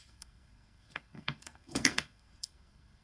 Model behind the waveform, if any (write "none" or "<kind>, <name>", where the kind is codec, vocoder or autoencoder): codec, SNAC